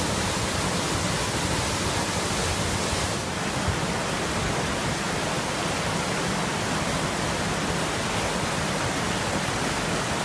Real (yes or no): yes